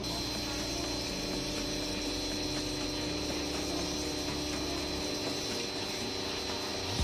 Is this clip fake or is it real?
real